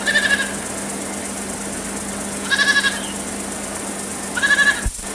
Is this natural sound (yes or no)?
yes